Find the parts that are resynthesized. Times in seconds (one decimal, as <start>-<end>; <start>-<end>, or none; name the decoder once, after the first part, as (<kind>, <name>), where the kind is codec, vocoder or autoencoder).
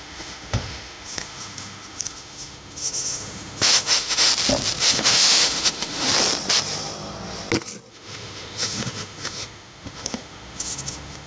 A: 0.0-4.3 (autoencoder, DAC-VAE); 4.8-6.1; 7.9-11.3